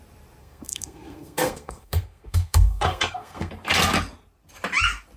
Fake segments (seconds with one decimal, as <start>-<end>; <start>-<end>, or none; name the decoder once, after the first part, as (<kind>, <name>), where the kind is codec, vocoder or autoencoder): 0.4-3.5 (codec, SNAC)